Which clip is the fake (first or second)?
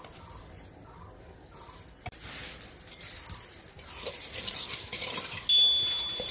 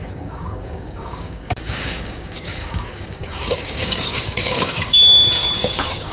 second